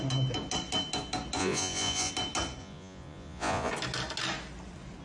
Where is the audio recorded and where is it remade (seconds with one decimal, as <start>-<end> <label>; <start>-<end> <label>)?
0.0-1.4 recorded; 1.4-2.1 remade; 2.1-2.6 recorded; 2.6-3.7 remade; 3.7-5.0 recorded